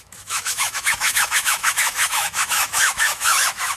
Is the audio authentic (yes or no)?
no